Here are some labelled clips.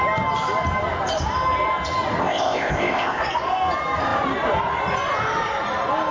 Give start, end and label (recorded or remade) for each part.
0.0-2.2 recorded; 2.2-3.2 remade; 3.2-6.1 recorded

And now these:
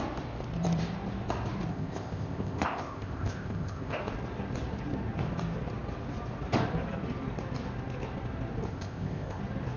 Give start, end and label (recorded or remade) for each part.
0.0-1.7 recorded; 1.7-4.0 remade; 4.0-8.7 recorded; 8.7-9.4 remade; 9.4-9.8 recorded

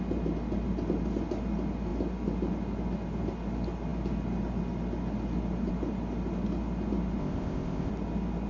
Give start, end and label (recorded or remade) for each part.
0.0-7.2 recorded; 7.2-7.9 remade; 7.9-8.5 recorded

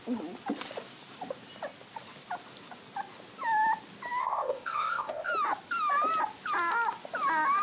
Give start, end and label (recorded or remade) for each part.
0.0-4.2 recorded; 4.2-5.3 remade; 5.3-7.6 recorded

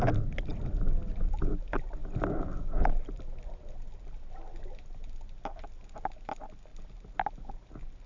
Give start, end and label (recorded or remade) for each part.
0.0-8.1 recorded

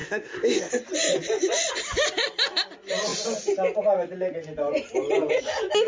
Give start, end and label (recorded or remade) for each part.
0.0-0.7 remade; 0.7-5.9 recorded

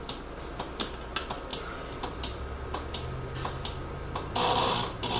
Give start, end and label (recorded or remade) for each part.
0.0-5.2 recorded

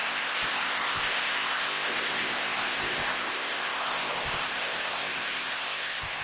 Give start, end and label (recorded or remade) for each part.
0.0-6.2 remade